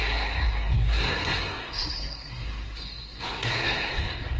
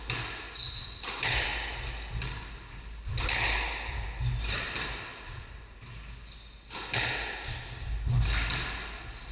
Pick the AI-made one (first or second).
first